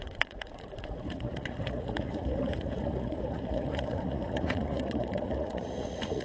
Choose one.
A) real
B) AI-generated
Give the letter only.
B